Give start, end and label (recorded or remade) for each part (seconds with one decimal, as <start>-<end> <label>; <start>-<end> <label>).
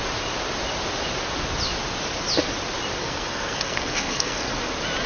0.0-3.0 recorded; 3.0-4.5 remade; 4.5-5.1 recorded